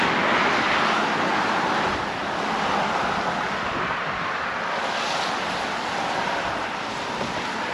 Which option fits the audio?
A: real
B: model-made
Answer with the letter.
A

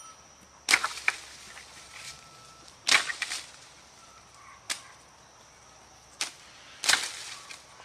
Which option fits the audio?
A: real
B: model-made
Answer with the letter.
A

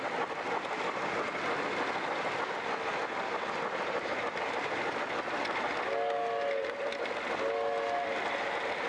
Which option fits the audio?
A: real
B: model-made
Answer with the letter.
A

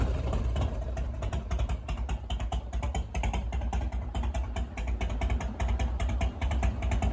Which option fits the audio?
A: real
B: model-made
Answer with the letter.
B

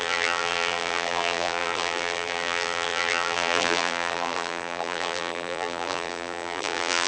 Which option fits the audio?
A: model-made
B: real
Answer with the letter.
A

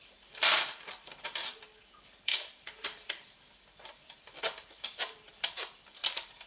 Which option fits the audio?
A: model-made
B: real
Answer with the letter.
A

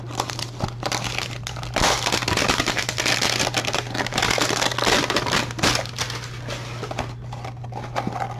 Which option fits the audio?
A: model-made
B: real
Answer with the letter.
B